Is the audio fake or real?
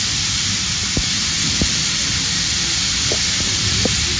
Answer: real